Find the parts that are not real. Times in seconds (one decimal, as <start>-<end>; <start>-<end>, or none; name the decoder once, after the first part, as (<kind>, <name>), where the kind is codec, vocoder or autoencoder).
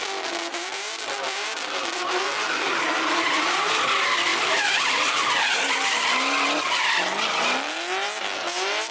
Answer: 4.3-5.1 (vocoder, BigVGAN v2)